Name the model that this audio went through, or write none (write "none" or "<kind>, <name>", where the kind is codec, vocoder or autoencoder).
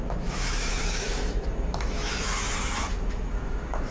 autoencoder, DAC-VAE